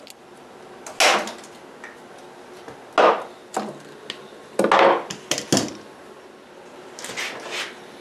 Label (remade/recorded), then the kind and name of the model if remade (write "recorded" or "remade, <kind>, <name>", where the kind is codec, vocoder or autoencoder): recorded